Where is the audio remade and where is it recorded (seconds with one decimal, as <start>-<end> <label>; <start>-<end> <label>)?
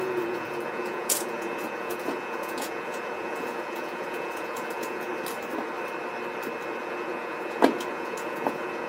0.0-5.1 remade; 5.1-6.8 recorded; 6.8-8.9 remade